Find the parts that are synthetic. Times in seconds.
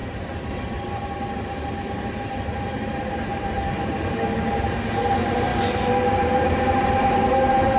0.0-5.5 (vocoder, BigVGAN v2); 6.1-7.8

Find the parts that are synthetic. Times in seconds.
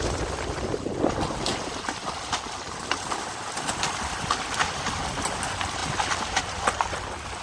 none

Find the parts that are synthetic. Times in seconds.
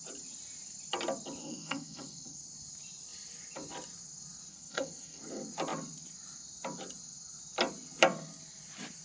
1.4-2.4 (codec, SNAC); 4.5-5.2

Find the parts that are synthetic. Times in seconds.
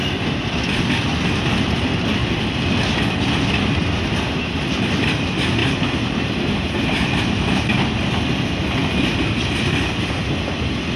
5.6-7.8 (vocoder, BigVGAN v2)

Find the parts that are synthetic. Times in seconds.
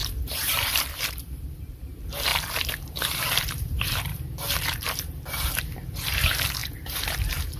0.0-7.6 (vocoder, BigVGAN v2)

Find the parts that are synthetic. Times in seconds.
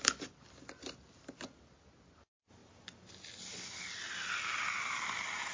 none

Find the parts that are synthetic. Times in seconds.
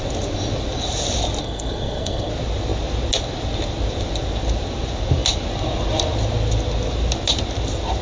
1.4-2.3 (codec, SNAC)